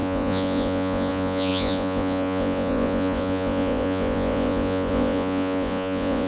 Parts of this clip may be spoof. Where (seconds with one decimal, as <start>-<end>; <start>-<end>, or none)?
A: 0.0-6.3